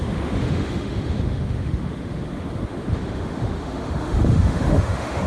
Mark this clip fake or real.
fake